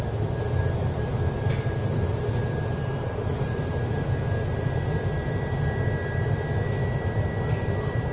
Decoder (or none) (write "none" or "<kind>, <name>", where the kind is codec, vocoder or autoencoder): none